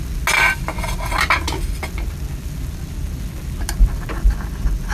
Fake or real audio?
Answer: real